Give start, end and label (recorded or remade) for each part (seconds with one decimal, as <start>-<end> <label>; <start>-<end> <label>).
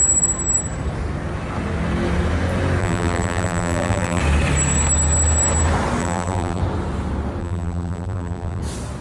0.0-2.8 recorded; 2.8-4.2 remade; 4.2-6.0 recorded; 6.0-6.6 remade; 6.6-7.4 recorded; 7.4-8.6 remade; 8.6-9.0 recorded